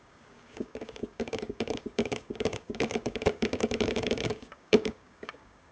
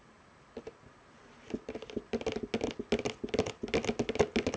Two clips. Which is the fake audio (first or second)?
first